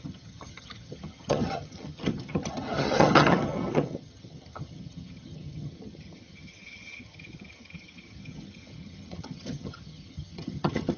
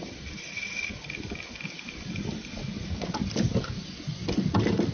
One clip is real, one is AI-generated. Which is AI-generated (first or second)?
first